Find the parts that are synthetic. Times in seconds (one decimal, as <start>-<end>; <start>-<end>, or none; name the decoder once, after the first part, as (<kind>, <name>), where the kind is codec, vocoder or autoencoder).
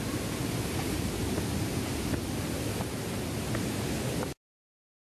none